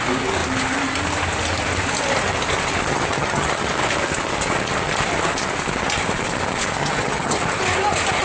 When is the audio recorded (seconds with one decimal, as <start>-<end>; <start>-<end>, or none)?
0.0-2.9; 3.7-6.8; 7.4-8.2